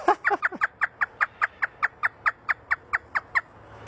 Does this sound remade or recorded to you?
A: recorded